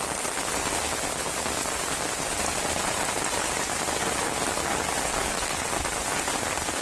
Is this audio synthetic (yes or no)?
no